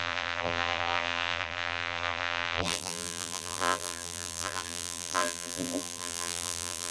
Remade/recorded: remade